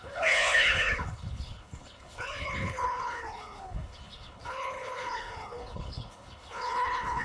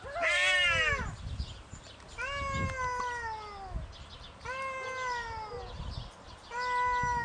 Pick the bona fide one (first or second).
second